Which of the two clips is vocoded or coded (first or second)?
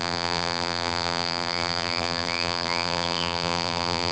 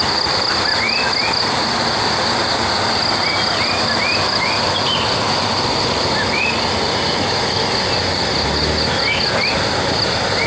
first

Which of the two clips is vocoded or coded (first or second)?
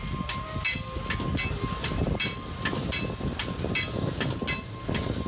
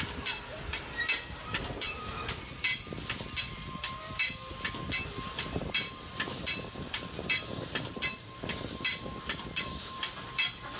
second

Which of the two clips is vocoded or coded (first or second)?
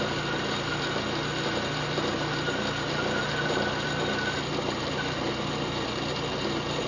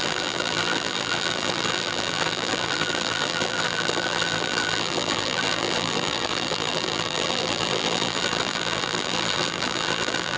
second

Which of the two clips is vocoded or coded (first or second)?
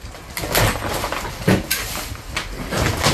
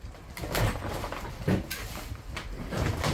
second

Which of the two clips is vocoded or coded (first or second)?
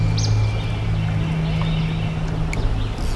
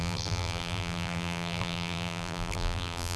second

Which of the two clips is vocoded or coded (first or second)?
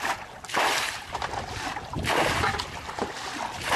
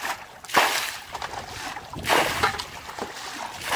first